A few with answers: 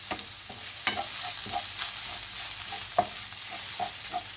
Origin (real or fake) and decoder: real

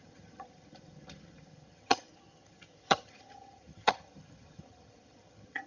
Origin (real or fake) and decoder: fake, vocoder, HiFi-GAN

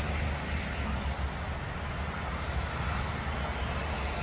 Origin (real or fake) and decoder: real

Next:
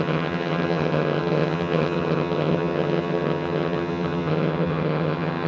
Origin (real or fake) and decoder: fake, vocoder, HiFi-GAN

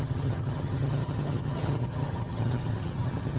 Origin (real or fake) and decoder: fake, vocoder, HiFi-GAN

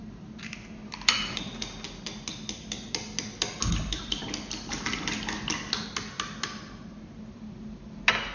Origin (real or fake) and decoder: real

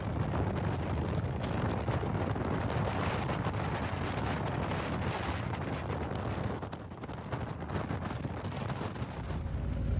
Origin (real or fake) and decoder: real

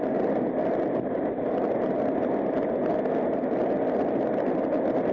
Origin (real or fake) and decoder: real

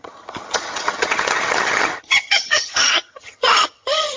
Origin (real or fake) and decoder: fake, vocoder, HiFi-GAN